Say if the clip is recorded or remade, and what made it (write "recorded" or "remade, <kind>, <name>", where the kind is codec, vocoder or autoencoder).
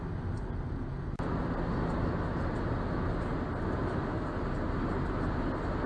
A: recorded